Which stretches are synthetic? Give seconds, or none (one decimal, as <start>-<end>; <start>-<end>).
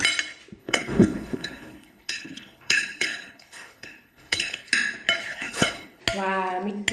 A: 0.6-4.7; 5.3-6.0